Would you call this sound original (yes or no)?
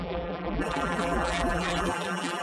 no